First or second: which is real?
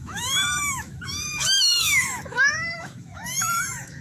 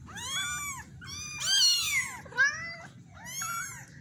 second